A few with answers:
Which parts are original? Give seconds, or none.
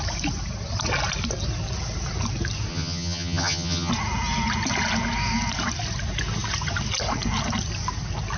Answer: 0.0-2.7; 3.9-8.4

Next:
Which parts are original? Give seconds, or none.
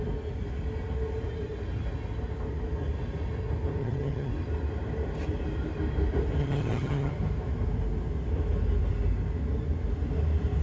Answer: 0.0-3.8; 4.3-6.4; 7.1-10.6